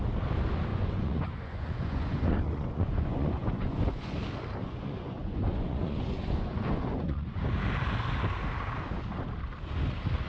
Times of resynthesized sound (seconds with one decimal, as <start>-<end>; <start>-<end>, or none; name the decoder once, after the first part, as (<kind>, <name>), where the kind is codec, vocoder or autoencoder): 0.7-4.1 (vocoder, Vocos); 4.6-7.5